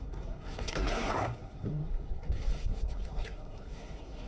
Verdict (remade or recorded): remade